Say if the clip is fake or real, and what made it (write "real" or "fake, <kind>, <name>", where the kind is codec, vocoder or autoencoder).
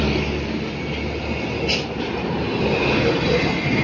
real